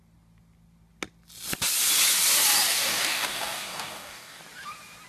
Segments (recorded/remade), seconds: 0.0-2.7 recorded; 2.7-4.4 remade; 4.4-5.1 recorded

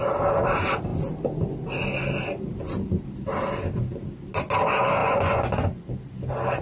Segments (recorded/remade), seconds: 0.0-5.0 recorded; 5.0-5.9 remade; 5.9-6.6 recorded

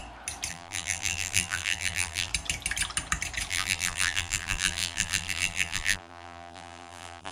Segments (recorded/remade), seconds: 0.0-0.5 recorded; 0.5-2.3 remade; 2.3-3.5 recorded; 3.5-7.3 remade

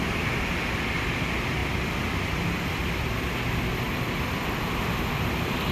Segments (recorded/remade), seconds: 0.0-5.7 recorded

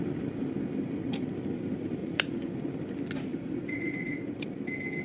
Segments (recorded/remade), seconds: 0.0-2.0 recorded; 2.0-2.5 remade; 2.5-3.3 recorded; 3.3-4.4 remade; 4.4-5.0 recorded